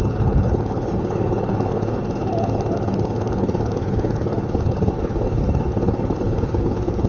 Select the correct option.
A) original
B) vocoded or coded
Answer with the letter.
B